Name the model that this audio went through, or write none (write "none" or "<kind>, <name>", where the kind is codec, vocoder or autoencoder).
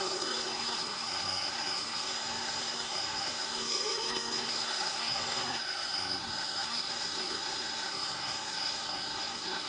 codec, SNAC